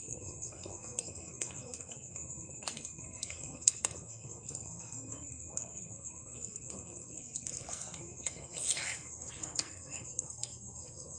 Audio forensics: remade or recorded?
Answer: remade